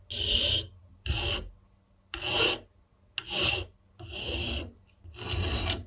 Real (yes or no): yes